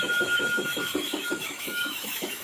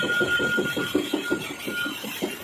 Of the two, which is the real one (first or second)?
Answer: second